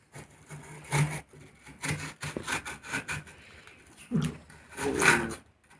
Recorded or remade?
recorded